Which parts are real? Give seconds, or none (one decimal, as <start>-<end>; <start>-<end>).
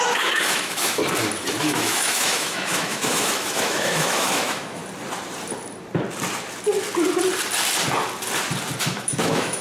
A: 1.0-1.6; 4.8-8.8